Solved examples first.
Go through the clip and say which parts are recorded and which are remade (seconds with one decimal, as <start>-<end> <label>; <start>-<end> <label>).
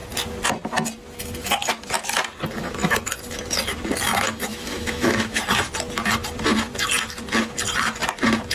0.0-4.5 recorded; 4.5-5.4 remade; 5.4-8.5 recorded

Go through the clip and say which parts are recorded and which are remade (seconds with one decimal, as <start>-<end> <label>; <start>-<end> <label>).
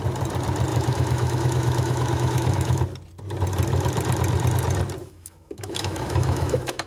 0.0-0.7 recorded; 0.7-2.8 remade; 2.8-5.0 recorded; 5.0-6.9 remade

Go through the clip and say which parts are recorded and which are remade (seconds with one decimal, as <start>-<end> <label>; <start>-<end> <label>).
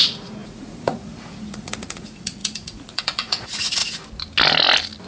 0.0-3.8 remade; 3.8-5.1 recorded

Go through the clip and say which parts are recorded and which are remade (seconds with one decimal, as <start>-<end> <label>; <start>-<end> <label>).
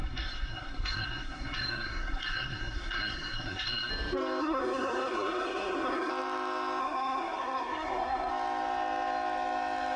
0.0-3.9 remade; 3.9-4.4 recorded; 4.4-6.1 remade; 6.1-6.8 recorded; 6.8-8.3 remade; 8.3-10.0 recorded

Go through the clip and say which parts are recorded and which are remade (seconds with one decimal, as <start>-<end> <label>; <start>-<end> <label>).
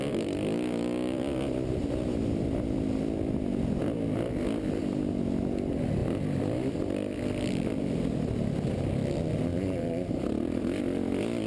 0.0-9.5 recorded; 9.5-10.8 remade; 10.8-11.5 recorded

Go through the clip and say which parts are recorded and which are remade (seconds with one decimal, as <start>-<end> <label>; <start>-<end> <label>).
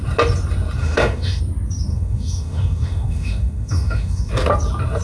0.0-0.8 recorded; 0.8-1.4 remade; 1.4-1.9 recorded; 1.9-4.3 remade; 4.3-5.0 recorded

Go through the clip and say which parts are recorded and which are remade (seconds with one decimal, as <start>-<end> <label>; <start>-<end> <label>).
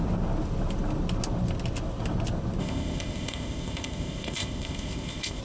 0.0-2.6 recorded; 2.6-5.4 remade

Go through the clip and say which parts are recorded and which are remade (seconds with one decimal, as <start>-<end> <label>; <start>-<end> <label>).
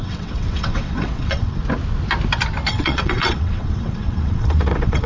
0.0-1.6 remade; 1.6-2.7 recorded; 2.7-5.1 remade